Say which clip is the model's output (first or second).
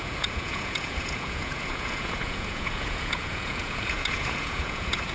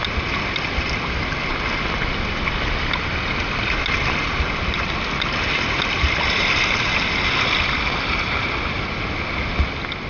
first